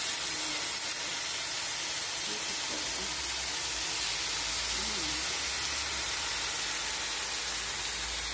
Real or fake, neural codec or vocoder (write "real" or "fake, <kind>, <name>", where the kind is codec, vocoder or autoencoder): real